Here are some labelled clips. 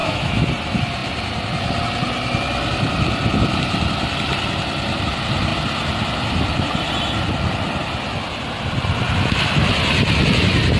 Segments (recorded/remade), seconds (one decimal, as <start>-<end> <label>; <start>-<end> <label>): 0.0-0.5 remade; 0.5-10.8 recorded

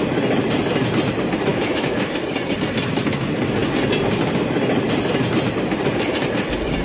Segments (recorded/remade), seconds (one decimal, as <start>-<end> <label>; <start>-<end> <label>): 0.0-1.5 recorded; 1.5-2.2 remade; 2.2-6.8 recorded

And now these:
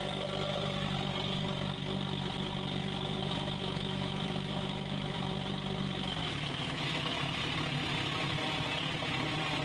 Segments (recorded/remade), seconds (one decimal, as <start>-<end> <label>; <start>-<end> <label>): 0.0-3.2 recorded; 3.2-5.3 remade; 5.3-6.2 recorded; 6.2-7.4 remade; 7.4-9.6 recorded